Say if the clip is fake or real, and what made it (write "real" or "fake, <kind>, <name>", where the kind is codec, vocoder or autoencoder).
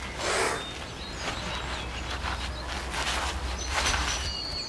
real